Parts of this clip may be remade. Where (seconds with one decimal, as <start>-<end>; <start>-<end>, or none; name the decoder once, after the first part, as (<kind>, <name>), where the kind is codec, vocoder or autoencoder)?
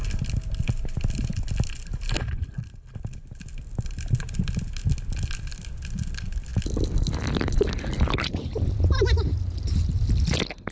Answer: none